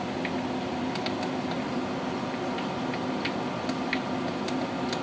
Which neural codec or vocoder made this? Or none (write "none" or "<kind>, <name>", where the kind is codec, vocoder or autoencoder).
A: none